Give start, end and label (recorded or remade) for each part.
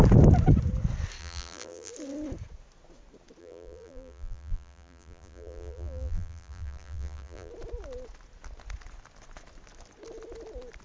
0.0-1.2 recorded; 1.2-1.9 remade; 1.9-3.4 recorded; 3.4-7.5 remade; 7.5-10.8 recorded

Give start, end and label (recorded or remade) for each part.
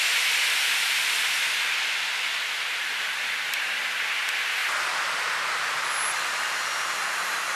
0.0-4.6 remade; 4.6-6.1 recorded; 6.1-7.6 remade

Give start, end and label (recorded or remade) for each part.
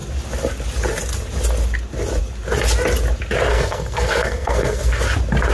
0.0-3.5 recorded; 3.5-5.0 remade; 5.0-5.5 recorded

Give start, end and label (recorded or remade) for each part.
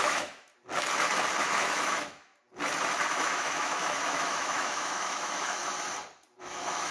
0.0-0.5 remade; 0.5-1.4 recorded; 1.4-2.3 remade; 2.3-3.1 recorded; 3.1-5.6 remade; 5.6-6.4 recorded; 6.4-6.9 remade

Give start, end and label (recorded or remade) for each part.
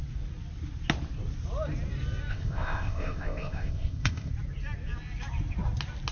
0.0-2.3 recorded; 2.3-4.3 remade; 4.3-6.1 recorded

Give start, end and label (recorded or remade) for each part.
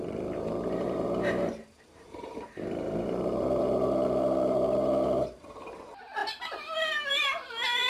0.0-7.9 remade